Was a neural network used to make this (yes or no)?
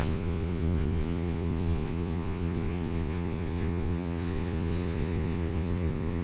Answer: yes